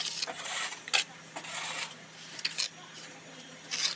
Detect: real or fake real